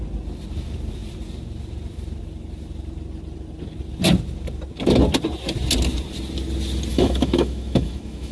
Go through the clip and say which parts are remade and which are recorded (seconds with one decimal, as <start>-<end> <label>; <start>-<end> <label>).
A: 0.0-6.9 recorded; 6.9-8.3 remade